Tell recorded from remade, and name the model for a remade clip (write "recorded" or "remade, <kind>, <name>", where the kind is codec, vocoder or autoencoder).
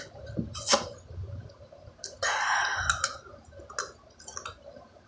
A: recorded